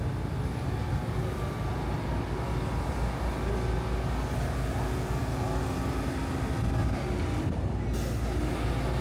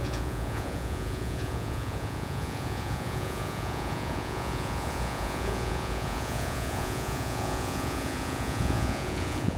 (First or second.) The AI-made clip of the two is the second